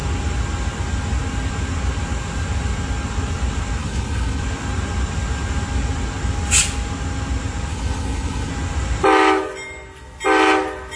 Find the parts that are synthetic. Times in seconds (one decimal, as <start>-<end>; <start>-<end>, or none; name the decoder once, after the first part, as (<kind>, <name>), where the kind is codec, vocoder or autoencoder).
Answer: 3.8-4.4 (codec, HILCodec); 7.7-8.5